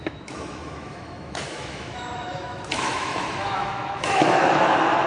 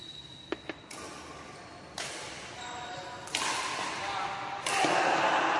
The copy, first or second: first